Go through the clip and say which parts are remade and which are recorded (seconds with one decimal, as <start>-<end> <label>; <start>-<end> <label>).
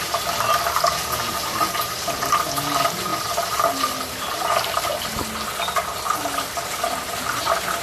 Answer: 0.0-7.8 recorded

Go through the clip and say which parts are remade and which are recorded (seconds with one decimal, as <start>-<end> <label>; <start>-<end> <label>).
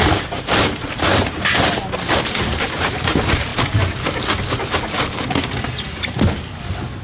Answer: 0.0-1.1 remade; 1.1-2.2 recorded; 2.2-3.5 remade; 3.5-7.0 recorded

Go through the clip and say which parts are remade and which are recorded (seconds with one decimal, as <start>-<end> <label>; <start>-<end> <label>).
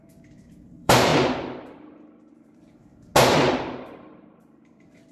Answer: 0.0-1.1 remade; 1.1-2.3 recorded; 2.3-3.1 remade; 3.1-3.9 recorded; 3.9-5.1 remade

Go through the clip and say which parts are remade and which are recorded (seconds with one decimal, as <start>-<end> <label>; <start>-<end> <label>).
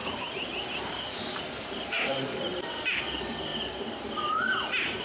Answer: 0.0-3.0 remade; 3.0-5.0 recorded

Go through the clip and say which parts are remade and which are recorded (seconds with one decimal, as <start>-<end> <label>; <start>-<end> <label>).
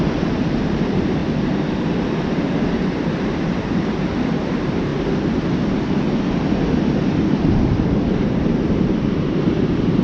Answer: 0.0-1.2 remade; 1.2-2.4 recorded; 2.4-4.9 remade; 4.9-7.0 recorded; 7.0-10.0 remade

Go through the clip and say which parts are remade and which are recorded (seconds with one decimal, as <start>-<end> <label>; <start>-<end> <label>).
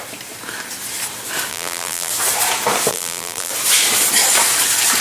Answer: 0.0-1.5 recorded; 1.5-2.1 remade; 2.1-2.9 recorded; 2.9-3.5 remade; 3.5-5.0 recorded